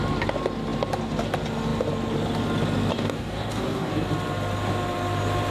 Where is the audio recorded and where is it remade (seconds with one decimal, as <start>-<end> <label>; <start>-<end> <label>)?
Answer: 0.0-2.9 recorded; 2.9-3.9 remade; 3.9-5.5 recorded